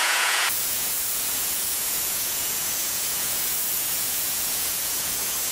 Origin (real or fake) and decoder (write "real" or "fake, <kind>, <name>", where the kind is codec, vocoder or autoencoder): fake, vocoder, Vocos